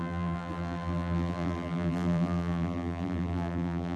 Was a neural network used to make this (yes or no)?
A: yes